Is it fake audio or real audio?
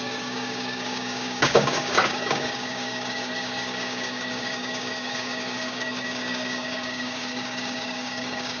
fake